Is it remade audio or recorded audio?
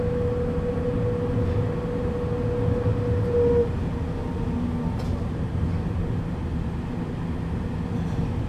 recorded